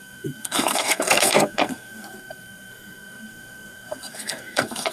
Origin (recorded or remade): remade